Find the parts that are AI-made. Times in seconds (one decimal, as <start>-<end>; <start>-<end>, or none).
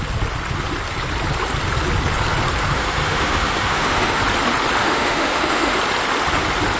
2.8-4.2; 4.8-5.8